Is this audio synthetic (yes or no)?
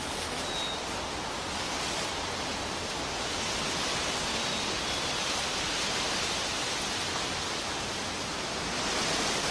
no